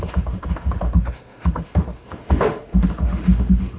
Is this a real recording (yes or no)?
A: no